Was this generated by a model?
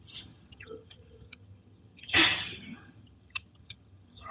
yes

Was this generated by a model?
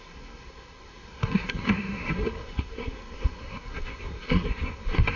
yes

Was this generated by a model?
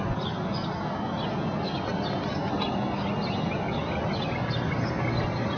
no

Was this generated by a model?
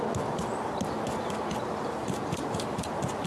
no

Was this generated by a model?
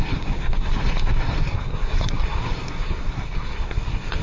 yes